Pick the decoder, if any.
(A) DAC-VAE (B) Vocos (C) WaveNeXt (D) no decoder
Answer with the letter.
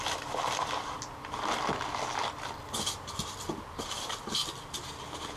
D